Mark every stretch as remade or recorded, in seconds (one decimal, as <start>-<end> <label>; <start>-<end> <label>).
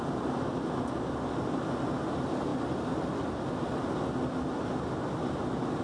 0.0-5.8 recorded